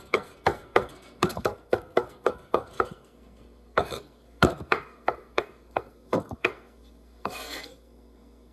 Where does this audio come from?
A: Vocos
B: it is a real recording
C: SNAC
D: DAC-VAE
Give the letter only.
C